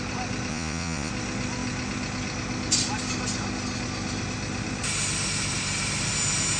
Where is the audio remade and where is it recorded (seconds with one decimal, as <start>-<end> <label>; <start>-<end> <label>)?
0.0-0.5 recorded; 0.5-1.1 remade; 1.1-6.6 recorded